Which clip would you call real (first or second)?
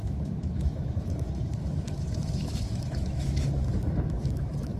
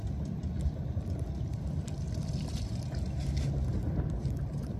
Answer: second